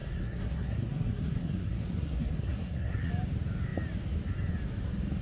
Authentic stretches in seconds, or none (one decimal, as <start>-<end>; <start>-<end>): 3.1-5.2